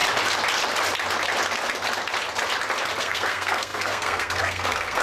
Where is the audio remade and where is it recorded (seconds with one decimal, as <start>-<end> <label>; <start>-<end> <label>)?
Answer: 0.0-3.0 recorded; 3.0-5.0 remade